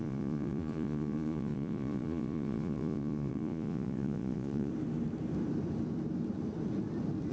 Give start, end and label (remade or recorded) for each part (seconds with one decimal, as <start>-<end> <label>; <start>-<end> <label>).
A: 0.0-4.7 remade; 4.7-7.3 recorded